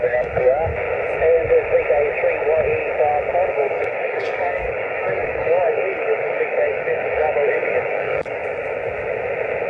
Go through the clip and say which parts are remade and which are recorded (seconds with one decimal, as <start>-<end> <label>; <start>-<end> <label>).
0.0-0.7 remade; 0.7-3.5 recorded; 3.5-8.4 remade; 8.4-9.7 recorded